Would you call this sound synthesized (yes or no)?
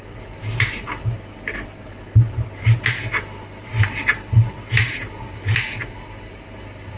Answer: no